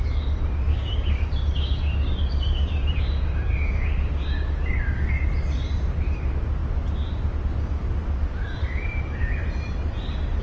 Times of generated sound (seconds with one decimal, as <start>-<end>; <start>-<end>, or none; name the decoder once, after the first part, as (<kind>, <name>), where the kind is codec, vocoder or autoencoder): 0.7-5.1 (codec, DAC); 8.6-9.4

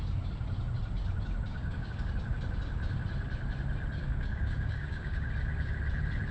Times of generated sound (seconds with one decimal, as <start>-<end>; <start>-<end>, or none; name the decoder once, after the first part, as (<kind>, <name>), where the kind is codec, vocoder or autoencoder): 1.5-2.1 (codec, DAC); 4.0-5.3

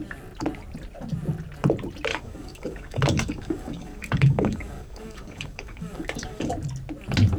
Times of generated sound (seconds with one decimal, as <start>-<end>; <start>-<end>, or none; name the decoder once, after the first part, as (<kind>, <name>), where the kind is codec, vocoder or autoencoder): 2.1-6.5 (codec, DAC)

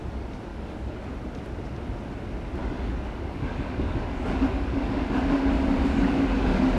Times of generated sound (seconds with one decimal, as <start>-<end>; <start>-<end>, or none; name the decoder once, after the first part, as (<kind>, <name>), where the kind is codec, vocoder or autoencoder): 0.5-1.1 (codec, DAC); 2.6-6.8

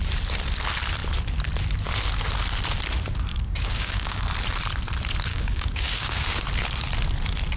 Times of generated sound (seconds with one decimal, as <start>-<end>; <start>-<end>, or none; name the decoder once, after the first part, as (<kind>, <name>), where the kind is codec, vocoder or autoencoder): 3.3-4.2 (codec, DAC); 5.3-6.4

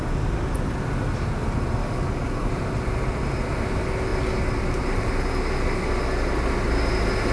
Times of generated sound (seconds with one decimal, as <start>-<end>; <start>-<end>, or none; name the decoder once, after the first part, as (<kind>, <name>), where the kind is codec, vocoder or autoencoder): 1.8-2.5 (codec, DAC)

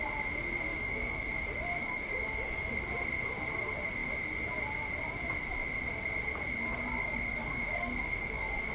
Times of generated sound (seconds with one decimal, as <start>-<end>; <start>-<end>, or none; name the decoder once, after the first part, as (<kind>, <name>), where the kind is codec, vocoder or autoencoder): 0.7-1.3 (codec, DAC); 1.8-2.7; 7.0-8.7